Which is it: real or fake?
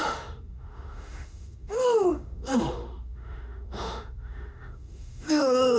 fake